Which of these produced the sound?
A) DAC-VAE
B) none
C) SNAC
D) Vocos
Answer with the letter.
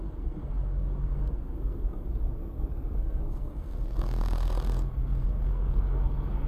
C